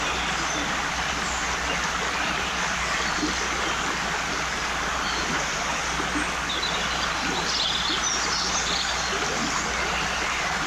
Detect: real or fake real